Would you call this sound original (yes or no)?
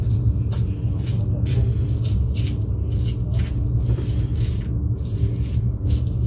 yes